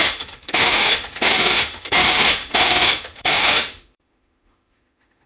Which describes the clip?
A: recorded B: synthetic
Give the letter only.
B